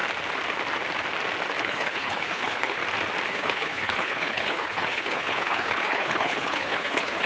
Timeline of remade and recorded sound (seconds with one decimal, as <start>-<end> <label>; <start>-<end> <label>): 0.0-1.6 recorded; 1.6-2.8 remade; 2.8-3.3 recorded; 3.3-7.3 remade